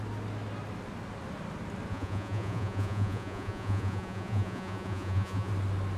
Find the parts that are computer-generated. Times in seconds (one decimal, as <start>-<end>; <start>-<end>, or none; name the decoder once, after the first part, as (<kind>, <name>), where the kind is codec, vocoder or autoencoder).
1.9-5.5 (vocoder, Vocos)